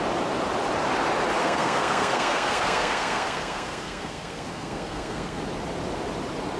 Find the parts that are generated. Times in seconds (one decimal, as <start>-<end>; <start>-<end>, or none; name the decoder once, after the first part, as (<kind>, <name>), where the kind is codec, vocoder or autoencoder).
1.4-5.4 (codec, SNAC)